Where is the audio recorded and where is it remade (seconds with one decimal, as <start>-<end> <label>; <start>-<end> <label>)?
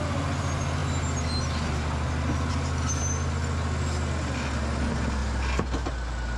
0.0-6.4 recorded